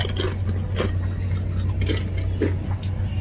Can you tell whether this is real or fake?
real